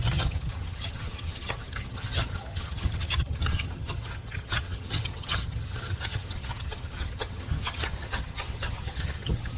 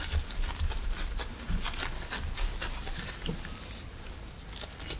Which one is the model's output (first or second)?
first